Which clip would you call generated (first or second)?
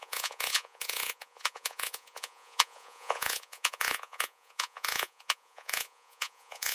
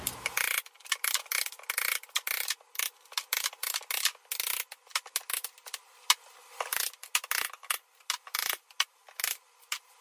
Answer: first